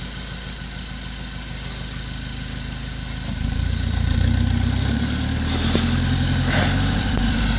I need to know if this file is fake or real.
fake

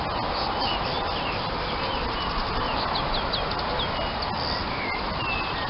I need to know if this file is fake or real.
real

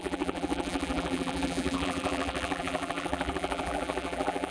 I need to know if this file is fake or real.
fake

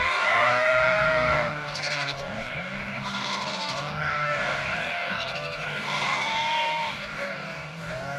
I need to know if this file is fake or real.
fake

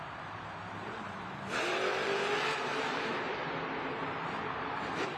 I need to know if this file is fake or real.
fake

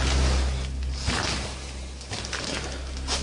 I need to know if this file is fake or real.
real